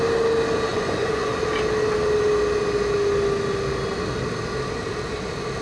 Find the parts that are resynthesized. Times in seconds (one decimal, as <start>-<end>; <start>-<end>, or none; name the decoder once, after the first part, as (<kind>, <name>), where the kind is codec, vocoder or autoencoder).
0.7-1.3 (vocoder, Vocos)